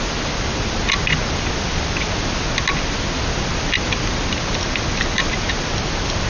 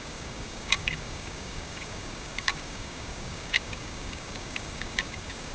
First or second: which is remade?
second